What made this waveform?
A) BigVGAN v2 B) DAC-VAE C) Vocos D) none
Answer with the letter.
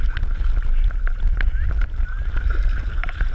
D